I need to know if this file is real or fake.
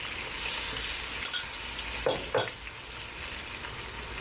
real